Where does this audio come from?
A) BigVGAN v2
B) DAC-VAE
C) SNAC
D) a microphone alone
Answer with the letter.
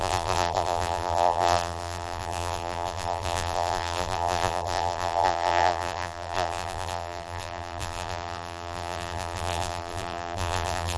A